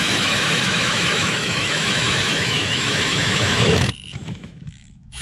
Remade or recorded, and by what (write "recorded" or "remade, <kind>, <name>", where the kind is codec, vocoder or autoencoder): remade, autoencoder, DAC-VAE